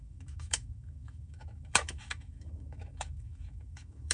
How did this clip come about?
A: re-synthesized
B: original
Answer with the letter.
A